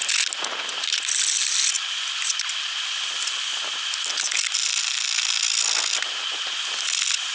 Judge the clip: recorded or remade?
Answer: recorded